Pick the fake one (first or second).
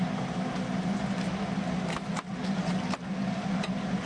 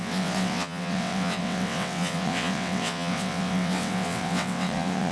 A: second